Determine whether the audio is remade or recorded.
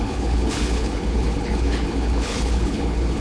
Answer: remade